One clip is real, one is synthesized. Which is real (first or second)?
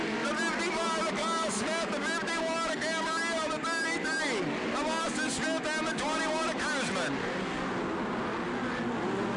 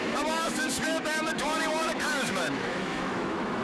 first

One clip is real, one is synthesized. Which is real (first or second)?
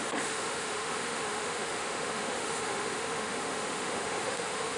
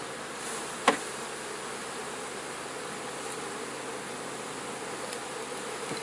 second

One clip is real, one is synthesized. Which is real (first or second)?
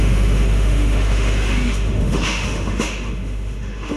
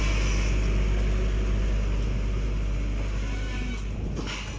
second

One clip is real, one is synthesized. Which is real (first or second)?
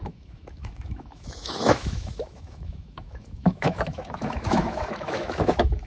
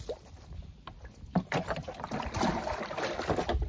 second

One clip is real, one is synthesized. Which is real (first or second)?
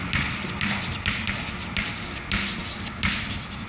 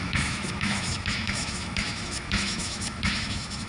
first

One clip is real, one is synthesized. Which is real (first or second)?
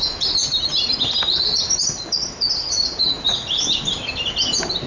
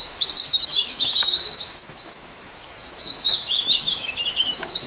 first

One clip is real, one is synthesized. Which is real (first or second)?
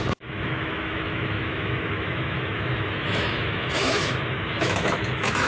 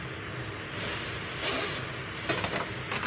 second